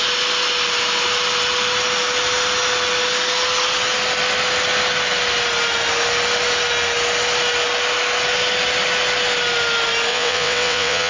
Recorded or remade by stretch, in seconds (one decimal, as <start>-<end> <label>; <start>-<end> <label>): 0.0-10.1 recorded; 10.1-11.1 remade